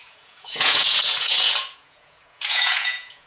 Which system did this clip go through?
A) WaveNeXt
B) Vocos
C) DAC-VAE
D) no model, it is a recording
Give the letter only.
B